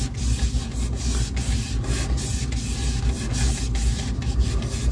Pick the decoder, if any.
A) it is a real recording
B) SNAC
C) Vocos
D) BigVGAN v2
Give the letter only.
A